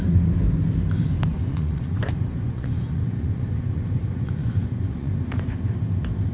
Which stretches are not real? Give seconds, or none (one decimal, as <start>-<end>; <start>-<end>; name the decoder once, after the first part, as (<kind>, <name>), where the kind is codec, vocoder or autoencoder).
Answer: 1.3-5.1 (vocoder, Vocos)